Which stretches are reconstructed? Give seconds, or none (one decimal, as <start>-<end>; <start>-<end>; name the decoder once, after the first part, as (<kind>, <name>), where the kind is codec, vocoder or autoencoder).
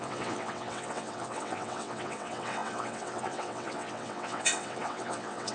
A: 0.0-5.5 (vocoder, WaveNeXt)